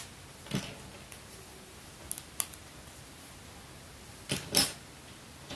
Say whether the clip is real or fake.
real